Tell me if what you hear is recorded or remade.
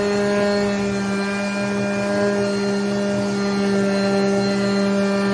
recorded